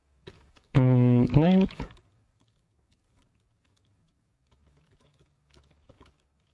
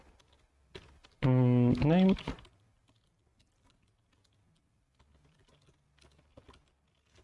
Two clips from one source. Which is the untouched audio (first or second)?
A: second